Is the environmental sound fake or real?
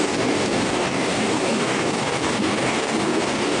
fake